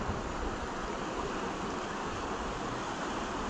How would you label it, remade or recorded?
recorded